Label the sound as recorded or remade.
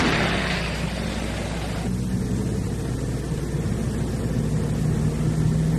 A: recorded